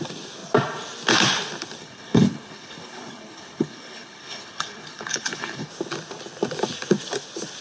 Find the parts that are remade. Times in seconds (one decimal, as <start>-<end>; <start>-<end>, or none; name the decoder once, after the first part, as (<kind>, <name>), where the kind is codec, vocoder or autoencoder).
1.8-5.7 (codec, HILCodec)